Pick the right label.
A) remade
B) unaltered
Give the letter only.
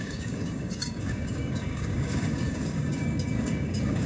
A